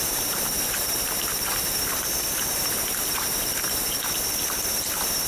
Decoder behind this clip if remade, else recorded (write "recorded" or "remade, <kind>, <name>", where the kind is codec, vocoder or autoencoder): recorded